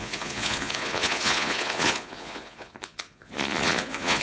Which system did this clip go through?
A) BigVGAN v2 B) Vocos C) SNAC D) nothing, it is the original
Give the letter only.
B